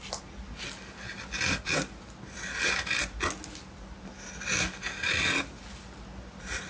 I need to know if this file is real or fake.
real